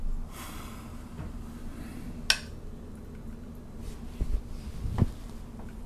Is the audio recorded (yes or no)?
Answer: yes